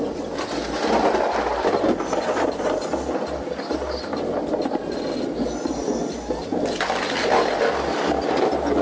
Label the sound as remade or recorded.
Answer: recorded